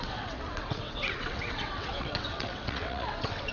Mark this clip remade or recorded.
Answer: remade